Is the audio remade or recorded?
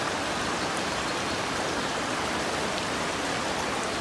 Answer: recorded